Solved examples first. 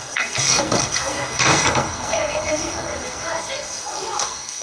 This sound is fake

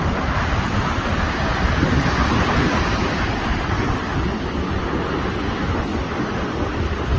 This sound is real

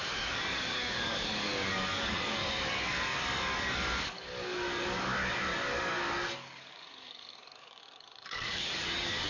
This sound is fake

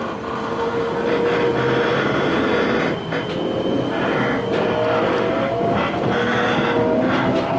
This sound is real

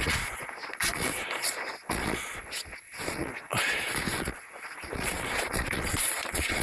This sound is fake